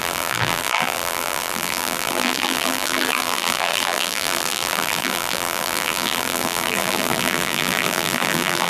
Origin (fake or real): fake